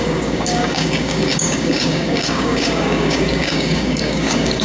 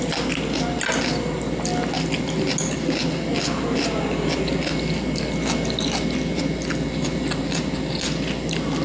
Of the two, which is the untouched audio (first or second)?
second